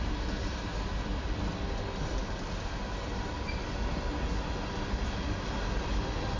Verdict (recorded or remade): recorded